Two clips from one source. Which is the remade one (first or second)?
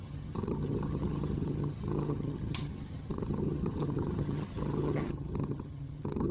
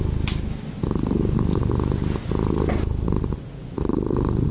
first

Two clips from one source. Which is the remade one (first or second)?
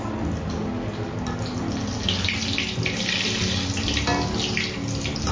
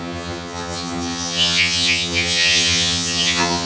second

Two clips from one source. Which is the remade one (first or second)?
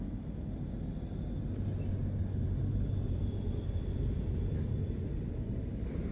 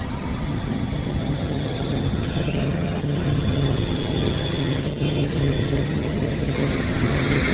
second